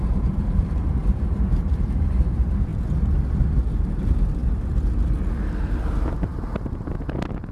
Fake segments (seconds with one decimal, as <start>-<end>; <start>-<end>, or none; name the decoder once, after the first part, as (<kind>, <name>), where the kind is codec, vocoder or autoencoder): 0.0-2.7 (vocoder, BigVGAN v2); 3.8-4.4